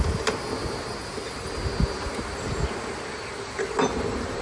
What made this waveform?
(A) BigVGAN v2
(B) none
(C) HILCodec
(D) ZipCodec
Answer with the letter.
B